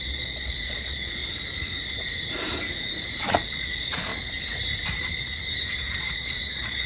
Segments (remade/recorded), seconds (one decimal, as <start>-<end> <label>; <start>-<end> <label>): 0.0-1.2 remade; 1.2-3.2 recorded; 3.2-4.1 remade; 4.1-6.0 recorded; 6.0-6.9 remade